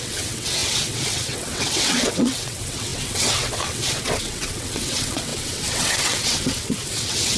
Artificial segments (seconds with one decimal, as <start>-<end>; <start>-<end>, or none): 0.0-7.4